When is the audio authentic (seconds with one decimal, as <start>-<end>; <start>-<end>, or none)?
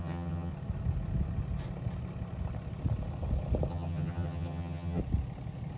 0.5-3.7; 5.0-5.8